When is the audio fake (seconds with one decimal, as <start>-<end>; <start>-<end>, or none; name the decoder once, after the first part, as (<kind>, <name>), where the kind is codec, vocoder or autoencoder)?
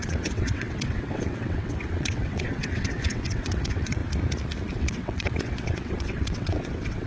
0.0-4.0 (vocoder, WaveNeXt); 4.7-7.1